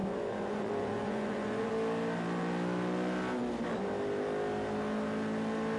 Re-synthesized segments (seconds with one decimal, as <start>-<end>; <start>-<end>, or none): 0.0-1.7